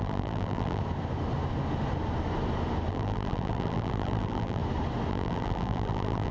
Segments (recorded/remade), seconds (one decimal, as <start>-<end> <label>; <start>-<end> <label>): 0.0-0.8 remade; 0.8-2.9 recorded; 2.9-4.6 remade; 4.6-5.1 recorded; 5.1-6.3 remade